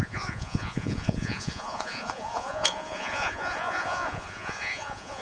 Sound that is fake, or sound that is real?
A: fake